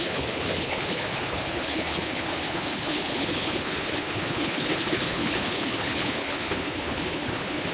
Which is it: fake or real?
fake